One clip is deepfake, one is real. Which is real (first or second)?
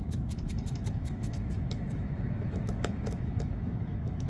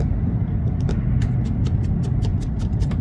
second